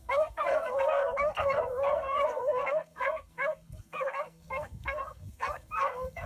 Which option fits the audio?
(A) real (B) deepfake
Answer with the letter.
B